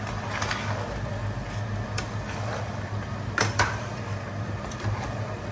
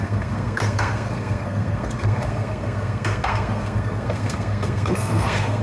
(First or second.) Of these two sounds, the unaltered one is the first